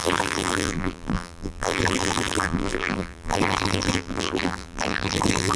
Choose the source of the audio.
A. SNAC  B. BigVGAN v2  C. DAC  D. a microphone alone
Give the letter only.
B